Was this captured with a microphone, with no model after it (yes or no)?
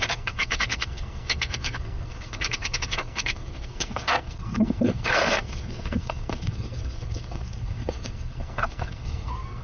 no